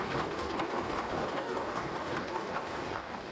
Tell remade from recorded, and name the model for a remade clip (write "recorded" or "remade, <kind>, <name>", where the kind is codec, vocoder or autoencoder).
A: remade, codec, DAC